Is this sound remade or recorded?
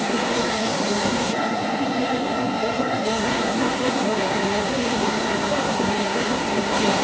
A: remade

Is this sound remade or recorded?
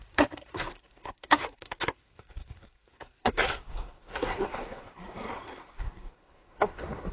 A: remade